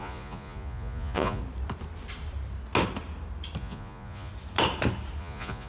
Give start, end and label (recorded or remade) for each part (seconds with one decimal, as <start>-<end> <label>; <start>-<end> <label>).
0.0-1.4 remade; 1.4-3.6 recorded; 3.6-4.3 remade; 4.3-5.2 recorded; 5.2-5.7 remade